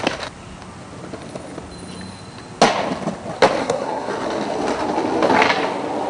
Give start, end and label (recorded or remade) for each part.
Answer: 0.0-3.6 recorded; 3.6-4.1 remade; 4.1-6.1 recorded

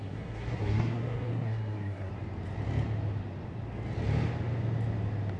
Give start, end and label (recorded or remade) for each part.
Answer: 0.0-2.1 remade; 2.1-5.4 recorded

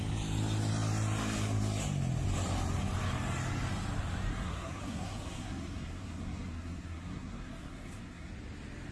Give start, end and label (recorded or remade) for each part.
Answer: 0.0-4.3 recorded; 4.3-8.3 remade; 8.3-8.9 recorded

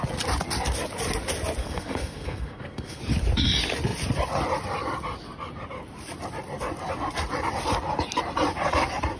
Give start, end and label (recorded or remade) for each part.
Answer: 0.0-1.6 recorded; 1.6-3.0 remade; 3.0-9.2 recorded

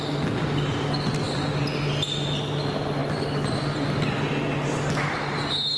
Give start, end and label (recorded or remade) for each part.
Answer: 0.0-5.8 recorded

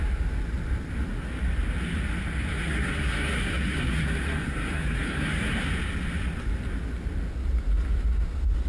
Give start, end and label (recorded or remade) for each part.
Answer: 0.0-2.5 recorded; 2.5-5.7 remade; 5.7-8.7 recorded